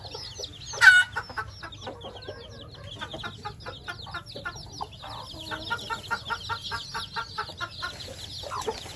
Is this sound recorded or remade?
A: recorded